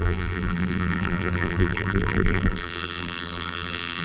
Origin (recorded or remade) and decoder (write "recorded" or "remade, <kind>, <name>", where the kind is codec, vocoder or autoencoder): remade, vocoder, BigVGAN v2